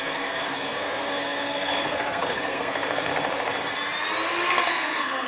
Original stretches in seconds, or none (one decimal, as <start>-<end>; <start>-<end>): 3.1-4.5